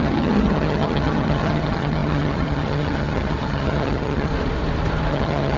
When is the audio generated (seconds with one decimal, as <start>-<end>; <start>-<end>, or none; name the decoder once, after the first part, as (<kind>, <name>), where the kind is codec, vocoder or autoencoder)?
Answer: 0.0-4.3 (vocoder, HiFi-GAN); 5.1-5.6